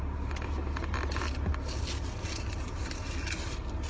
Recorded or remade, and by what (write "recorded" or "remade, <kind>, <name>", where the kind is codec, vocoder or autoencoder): recorded